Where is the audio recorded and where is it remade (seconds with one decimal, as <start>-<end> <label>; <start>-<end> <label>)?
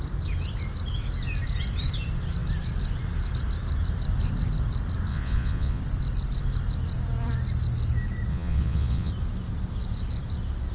0.0-5.1 recorded; 5.1-5.8 remade; 5.8-8.3 recorded; 8.3-9.1 remade; 9.1-10.7 recorded